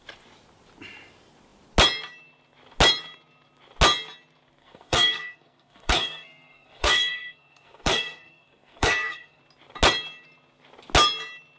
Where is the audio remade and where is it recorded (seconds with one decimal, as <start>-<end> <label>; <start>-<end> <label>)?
0.0-4.6 recorded; 4.6-9.4 remade; 9.4-11.6 recorded